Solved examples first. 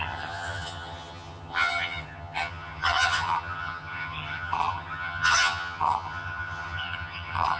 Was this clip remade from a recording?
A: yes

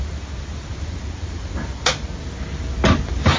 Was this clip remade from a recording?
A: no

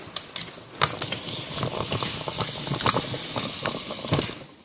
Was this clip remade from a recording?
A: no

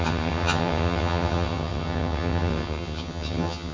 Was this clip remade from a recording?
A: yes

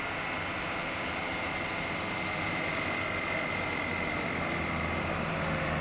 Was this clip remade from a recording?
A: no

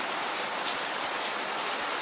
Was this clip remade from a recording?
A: no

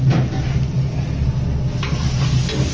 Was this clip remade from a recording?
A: no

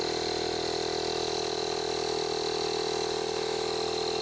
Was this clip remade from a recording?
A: no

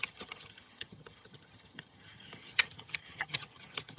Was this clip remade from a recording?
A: yes